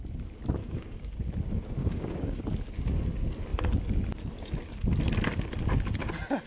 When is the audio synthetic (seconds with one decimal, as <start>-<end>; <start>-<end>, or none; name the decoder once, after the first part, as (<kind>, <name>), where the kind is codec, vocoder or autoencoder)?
0.6-1.3 (codec, DAC); 1.8-2.4

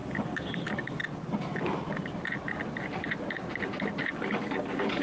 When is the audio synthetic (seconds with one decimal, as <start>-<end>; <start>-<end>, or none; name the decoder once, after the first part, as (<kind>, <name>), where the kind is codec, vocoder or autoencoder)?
0.0-1.0 (codec, DAC); 4.0-5.0

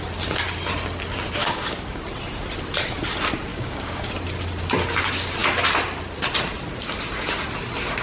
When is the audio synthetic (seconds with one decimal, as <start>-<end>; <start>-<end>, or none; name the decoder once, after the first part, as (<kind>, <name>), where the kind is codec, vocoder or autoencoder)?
1.4-2.0 (codec, DAC); 3.5-4.1